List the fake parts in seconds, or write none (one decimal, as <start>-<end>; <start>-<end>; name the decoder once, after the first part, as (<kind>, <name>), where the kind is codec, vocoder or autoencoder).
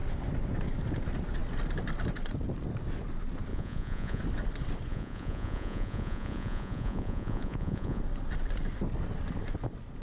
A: 3.5-4.2 (vocoder, Vocos); 4.9-8.0